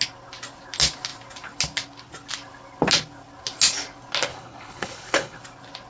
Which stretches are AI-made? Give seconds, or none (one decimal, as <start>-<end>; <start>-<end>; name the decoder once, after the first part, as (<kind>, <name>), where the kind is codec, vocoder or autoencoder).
4.3-5.4 (codec, HILCodec)